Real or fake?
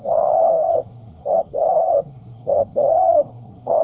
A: fake